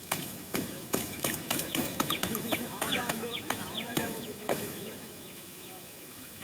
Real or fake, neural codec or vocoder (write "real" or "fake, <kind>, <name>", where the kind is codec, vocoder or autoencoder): fake, autoencoder, DAC-VAE